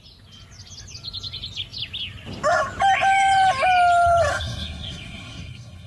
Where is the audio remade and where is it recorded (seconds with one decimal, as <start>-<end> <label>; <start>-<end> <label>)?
0.0-4.3 recorded; 4.3-5.9 remade

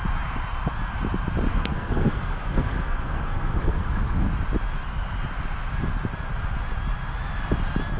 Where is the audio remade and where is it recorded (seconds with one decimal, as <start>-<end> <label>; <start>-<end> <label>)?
0.0-1.5 recorded; 1.5-4.3 remade; 4.3-8.0 recorded

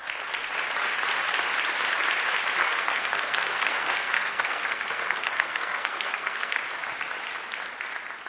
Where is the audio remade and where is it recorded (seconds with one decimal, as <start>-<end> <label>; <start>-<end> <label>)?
0.0-2.6 recorded; 2.6-6.6 remade; 6.6-8.3 recorded

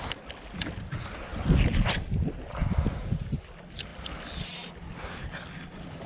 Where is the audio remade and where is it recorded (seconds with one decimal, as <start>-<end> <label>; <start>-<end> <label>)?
0.0-6.1 recorded

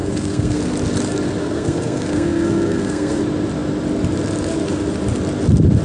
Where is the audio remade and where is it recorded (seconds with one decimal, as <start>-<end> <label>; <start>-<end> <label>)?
0.0-0.6 remade; 0.6-1.4 recorded; 1.4-3.2 remade; 3.2-5.8 recorded

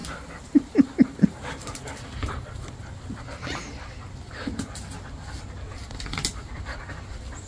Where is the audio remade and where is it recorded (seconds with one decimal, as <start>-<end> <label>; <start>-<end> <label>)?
0.0-7.5 recorded